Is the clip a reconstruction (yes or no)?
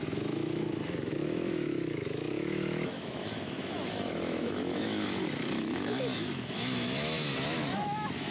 yes